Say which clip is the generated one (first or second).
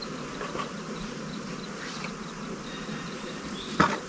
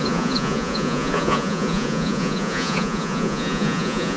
second